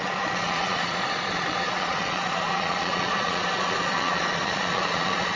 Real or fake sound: fake